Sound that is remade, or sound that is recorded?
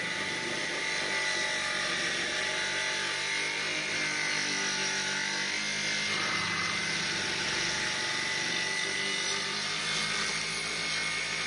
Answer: recorded